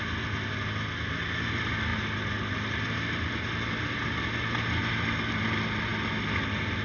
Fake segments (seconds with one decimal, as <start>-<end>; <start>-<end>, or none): none